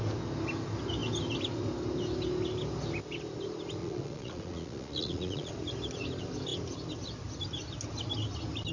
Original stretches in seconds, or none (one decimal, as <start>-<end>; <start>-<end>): 0.0-3.8; 5.5-8.7

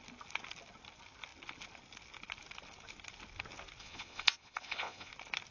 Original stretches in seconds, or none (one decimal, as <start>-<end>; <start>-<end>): 0.0-3.8; 5.1-5.5

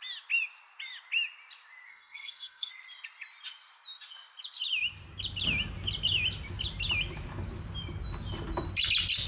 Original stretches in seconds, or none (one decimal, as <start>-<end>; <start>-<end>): 0.0-1.9; 2.7-9.3

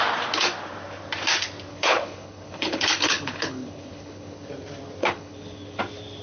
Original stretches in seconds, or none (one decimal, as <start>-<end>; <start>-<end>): 0.0-1.7; 4.5-5.0; 5.8-6.2